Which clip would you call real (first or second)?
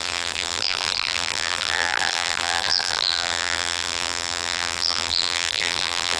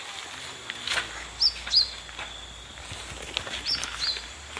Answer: second